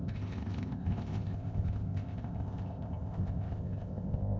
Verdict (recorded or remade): remade